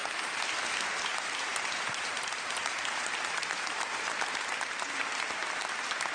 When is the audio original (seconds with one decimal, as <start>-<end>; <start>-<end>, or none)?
0.6-1.5; 5.0-6.1

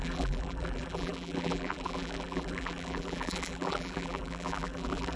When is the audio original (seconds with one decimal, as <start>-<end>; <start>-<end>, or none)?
none